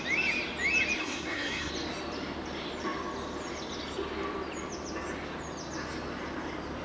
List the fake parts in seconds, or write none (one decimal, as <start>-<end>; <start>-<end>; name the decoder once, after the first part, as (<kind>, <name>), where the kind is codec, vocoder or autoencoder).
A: 1.0-1.7 (codec, SNAC)